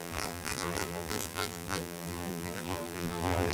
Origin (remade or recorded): remade